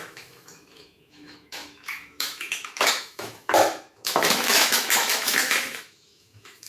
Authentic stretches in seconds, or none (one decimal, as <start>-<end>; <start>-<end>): none